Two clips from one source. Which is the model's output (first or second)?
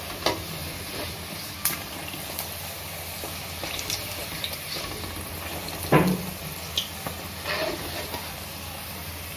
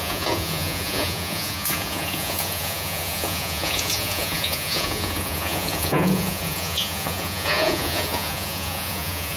second